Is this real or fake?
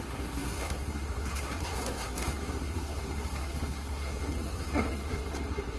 fake